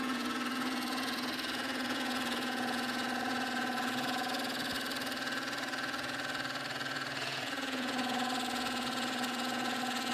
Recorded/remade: remade